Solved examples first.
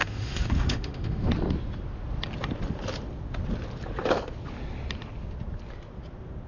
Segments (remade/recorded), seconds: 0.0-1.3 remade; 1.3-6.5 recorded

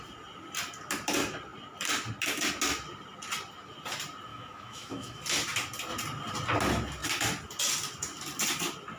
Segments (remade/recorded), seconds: 0.0-4.3 recorded; 4.3-5.2 remade; 5.2-9.0 recorded